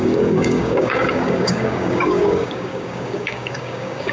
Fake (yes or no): yes